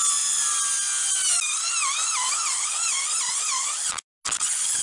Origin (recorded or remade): recorded